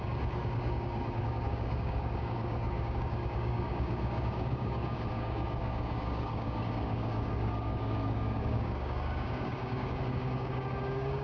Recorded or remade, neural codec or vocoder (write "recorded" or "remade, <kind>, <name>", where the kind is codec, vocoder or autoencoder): remade, codec, DAC